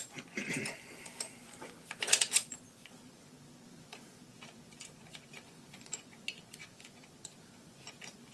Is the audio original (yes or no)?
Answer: no